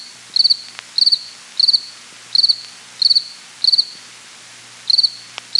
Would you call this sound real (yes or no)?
yes